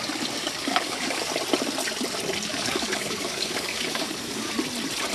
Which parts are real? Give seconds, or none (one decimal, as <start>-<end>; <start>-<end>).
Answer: 0.0-0.4; 1.3-2.5; 4.5-5.1